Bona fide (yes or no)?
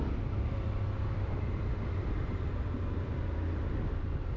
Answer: no